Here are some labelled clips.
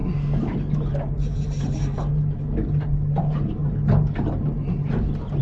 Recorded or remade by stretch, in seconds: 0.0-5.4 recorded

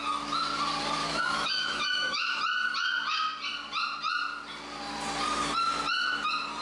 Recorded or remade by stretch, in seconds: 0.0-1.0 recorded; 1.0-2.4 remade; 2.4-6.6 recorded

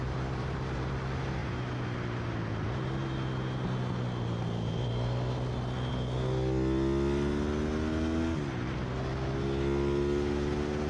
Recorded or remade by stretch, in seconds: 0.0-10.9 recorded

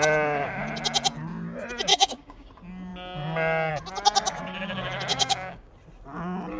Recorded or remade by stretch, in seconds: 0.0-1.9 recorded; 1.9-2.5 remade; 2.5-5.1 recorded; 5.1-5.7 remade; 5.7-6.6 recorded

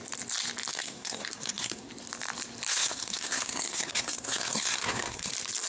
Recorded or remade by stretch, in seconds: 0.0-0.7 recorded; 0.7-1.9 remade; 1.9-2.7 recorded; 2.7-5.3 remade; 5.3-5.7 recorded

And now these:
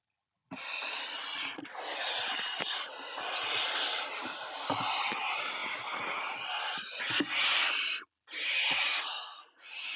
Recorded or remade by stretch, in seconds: 0.0-10.0 recorded

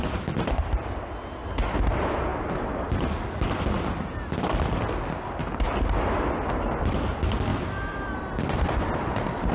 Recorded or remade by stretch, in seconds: 0.0-2.3 recorded; 2.3-3.4 remade; 3.4-7.5 recorded; 7.5-9.5 remade